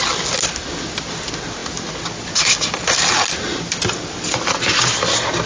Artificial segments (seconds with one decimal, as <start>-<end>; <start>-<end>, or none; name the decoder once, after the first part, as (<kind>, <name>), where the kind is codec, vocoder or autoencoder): none